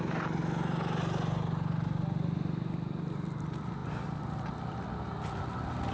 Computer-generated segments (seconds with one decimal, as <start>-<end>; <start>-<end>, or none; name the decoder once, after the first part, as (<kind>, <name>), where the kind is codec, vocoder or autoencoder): none